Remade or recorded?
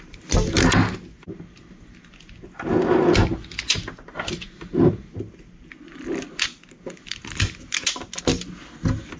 recorded